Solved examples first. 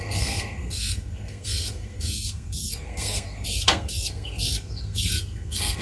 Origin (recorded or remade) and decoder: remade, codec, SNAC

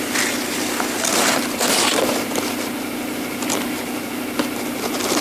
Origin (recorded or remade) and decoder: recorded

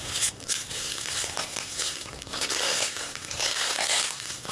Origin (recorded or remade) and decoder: remade, codec, SNAC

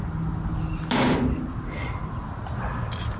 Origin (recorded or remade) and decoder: recorded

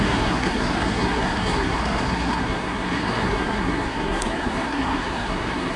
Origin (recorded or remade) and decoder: remade, codec, SNAC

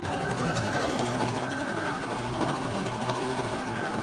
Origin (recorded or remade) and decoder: remade, codec, SNAC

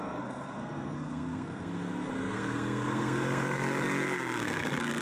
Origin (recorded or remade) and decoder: remade, codec, SNAC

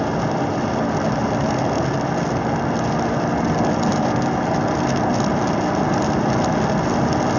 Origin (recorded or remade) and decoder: recorded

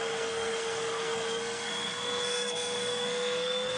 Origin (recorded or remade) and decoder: remade, codec, SNAC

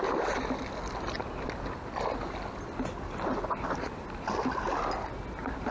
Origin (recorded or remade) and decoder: recorded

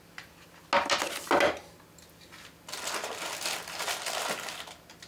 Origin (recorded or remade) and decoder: recorded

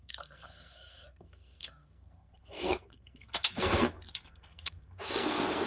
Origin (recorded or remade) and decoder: remade, codec, SNAC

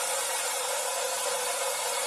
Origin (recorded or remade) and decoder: recorded